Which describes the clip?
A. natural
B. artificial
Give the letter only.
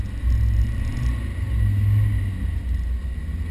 A